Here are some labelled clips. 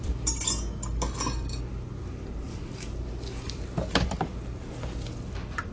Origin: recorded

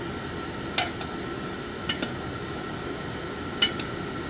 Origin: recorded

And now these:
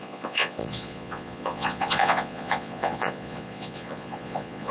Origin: remade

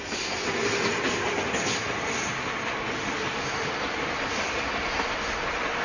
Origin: recorded